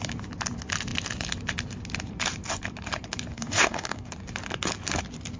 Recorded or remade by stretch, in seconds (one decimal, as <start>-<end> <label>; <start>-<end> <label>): 0.0-3.3 recorded; 3.3-4.1 remade; 4.1-5.4 recorded